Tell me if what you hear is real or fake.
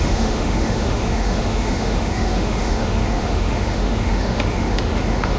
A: fake